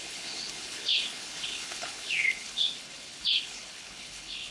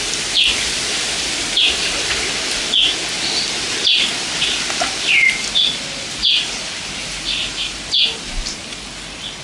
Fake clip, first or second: first